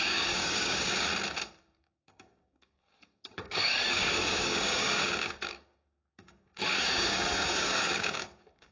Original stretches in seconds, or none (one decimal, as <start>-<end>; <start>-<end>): 1.1-1.8